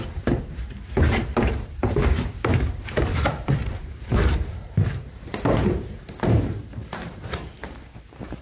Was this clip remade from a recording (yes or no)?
yes